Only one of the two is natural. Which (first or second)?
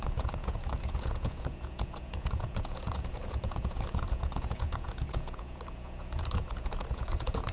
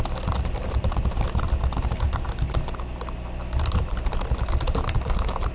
second